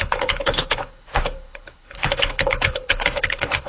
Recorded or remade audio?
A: remade